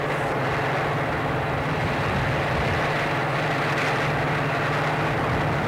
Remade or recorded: recorded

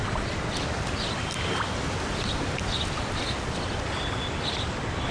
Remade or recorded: recorded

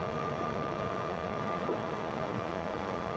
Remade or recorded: remade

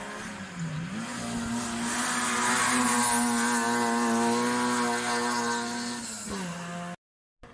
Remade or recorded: recorded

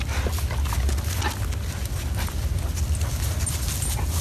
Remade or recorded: recorded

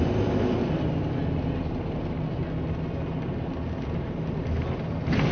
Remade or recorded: recorded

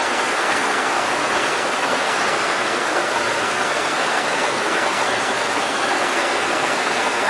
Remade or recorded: remade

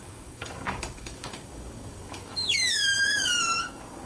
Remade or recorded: remade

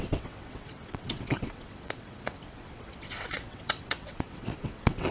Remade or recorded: remade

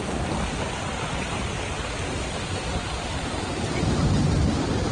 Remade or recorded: recorded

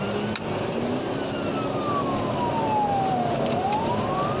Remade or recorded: recorded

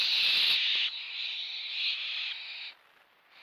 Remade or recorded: recorded